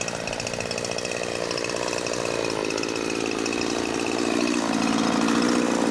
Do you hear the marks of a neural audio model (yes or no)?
no